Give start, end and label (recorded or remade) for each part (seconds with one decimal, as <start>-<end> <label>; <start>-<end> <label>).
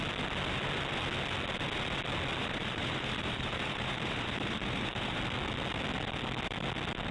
0.0-2.4 recorded; 2.4-5.2 remade; 5.2-7.1 recorded